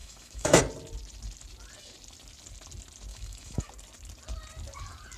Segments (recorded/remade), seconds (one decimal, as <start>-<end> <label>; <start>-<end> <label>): 0.0-0.6 remade; 0.6-3.1 recorded; 3.1-3.7 remade; 3.7-5.2 recorded